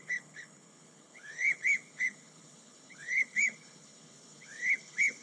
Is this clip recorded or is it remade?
remade